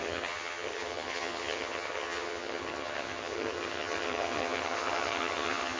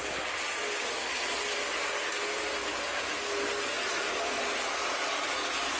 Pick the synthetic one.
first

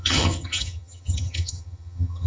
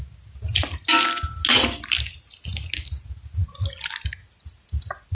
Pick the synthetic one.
first